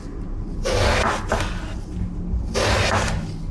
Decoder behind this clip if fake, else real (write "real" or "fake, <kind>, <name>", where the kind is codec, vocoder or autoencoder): real